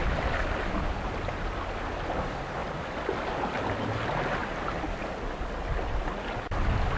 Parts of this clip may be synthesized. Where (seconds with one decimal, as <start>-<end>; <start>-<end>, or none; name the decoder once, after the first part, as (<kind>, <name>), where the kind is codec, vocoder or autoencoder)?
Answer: none